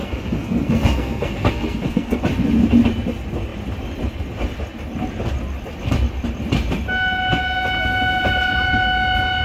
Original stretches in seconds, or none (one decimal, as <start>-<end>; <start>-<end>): 2.2-9.4